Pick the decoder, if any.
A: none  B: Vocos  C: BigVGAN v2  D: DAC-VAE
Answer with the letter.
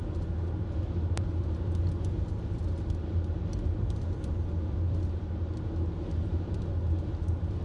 A